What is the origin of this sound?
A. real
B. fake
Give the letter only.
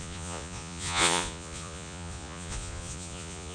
B